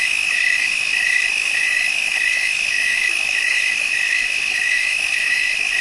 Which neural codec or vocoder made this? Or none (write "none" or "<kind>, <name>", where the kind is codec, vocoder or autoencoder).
autoencoder, DAC-VAE